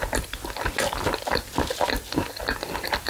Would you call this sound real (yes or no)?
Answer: yes